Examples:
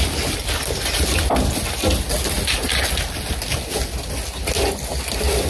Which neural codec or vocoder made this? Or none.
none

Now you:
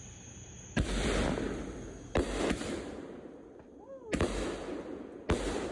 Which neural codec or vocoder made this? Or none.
none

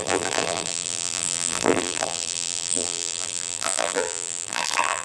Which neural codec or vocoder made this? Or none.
vocoder, BigVGAN v2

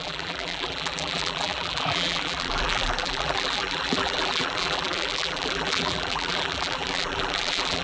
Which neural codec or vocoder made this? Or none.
vocoder, BigVGAN v2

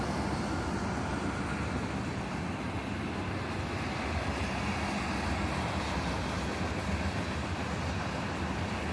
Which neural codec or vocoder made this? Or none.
none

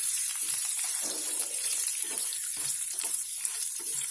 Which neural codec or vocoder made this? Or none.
vocoder, BigVGAN v2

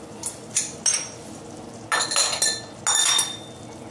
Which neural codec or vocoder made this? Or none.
none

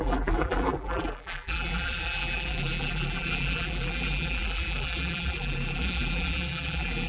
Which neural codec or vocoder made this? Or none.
vocoder, BigVGAN v2